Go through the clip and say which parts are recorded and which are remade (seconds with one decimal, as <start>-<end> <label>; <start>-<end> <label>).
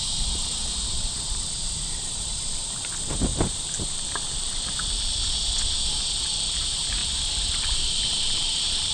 0.0-5.2 remade; 5.2-6.5 recorded; 6.5-8.9 remade